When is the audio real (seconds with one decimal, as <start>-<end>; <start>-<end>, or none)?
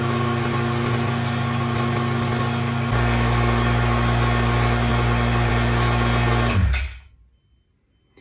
0.0-8.2